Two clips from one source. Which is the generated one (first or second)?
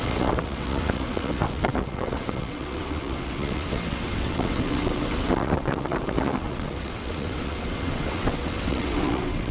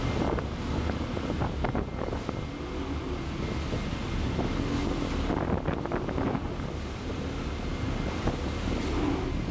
first